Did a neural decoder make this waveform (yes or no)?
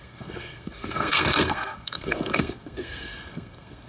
yes